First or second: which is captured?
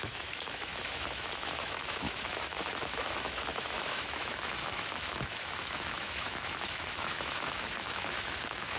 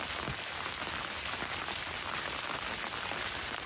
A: second